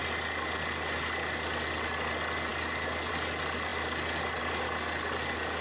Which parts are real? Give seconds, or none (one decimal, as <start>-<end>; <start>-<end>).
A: 0.0-5.6